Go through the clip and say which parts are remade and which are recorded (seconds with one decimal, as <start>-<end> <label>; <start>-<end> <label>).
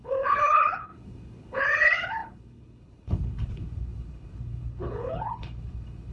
0.0-6.1 remade